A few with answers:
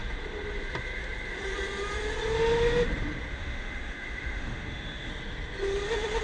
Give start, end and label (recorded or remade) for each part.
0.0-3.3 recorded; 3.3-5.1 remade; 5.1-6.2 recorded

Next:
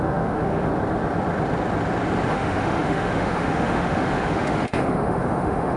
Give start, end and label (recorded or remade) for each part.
0.0-0.7 remade; 0.7-2.3 recorded; 2.3-5.8 remade

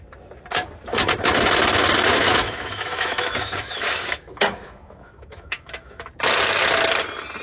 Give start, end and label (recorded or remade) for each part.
0.0-2.1 recorded; 2.1-6.1 remade; 6.1-7.4 recorded

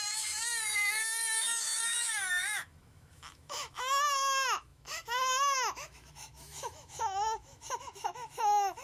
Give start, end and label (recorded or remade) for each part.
0.0-8.8 remade

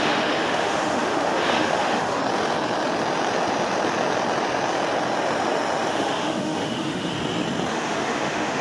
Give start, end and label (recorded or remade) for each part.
0.0-2.2 remade; 2.2-5.9 recorded; 5.9-7.1 remade; 7.1-7.7 recorded; 7.7-8.6 remade

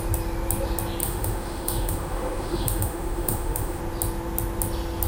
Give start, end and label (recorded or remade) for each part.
0.0-1.0 recorded; 1.0-3.8 remade; 3.8-5.1 recorded